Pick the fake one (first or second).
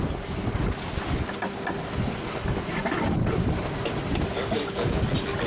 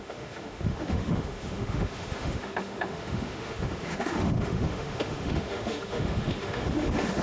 second